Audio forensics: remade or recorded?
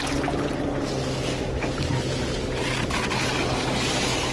recorded